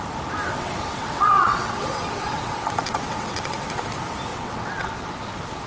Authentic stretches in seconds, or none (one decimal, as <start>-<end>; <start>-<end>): 0.0-0.4; 3.8-4.3; 5.1-5.7